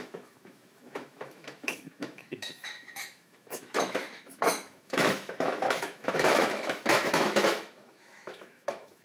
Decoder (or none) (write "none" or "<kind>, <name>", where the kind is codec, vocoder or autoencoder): autoencoder, DAC-VAE